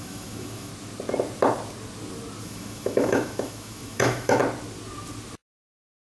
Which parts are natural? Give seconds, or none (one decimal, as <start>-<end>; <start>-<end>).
0.7-2.4; 4.4-6.0